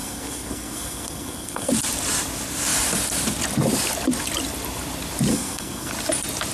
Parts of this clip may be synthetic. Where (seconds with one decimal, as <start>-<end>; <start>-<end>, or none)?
0.0-1.7; 5.3-5.9